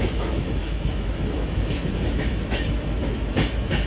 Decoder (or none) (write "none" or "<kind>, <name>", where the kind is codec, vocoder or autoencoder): autoencoder, DAC-VAE